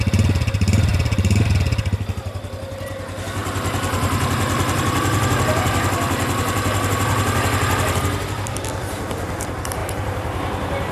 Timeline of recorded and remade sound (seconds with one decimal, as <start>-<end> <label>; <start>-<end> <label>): 0.0-10.9 recorded